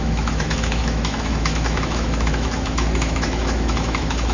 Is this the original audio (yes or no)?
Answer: no